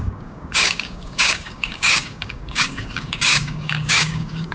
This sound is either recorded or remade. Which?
remade